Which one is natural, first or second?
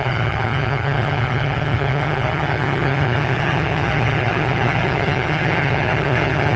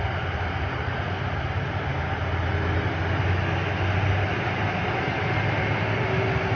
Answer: second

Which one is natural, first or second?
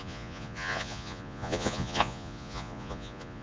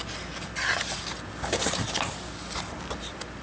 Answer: second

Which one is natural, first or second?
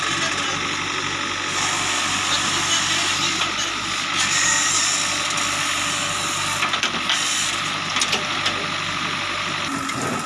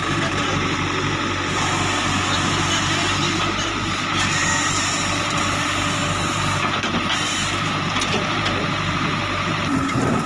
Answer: first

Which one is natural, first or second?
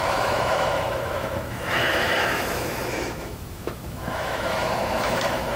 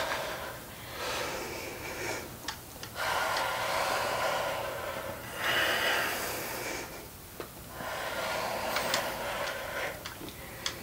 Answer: second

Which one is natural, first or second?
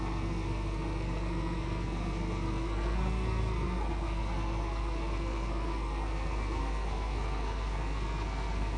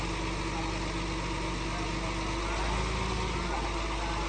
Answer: second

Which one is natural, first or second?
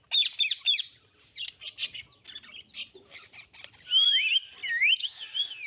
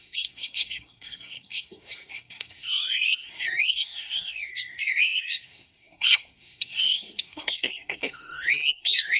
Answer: first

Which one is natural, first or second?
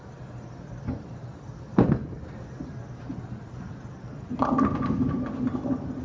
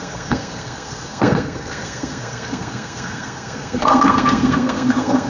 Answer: first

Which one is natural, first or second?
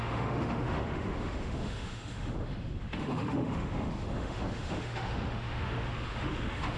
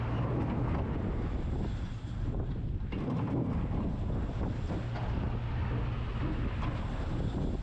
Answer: second